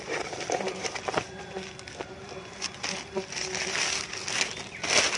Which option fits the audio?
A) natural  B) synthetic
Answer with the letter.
A